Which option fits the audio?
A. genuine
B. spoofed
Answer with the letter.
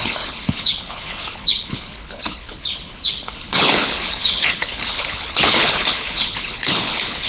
B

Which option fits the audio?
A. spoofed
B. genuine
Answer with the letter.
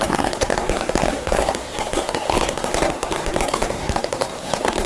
A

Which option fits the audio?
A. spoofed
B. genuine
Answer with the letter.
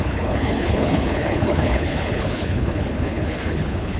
A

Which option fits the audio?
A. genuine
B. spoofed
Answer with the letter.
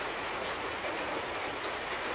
B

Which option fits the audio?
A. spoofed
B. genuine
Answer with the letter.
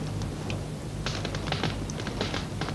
B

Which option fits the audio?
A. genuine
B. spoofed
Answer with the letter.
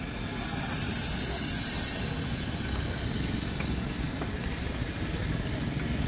A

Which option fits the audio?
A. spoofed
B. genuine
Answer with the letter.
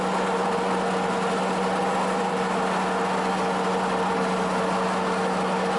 B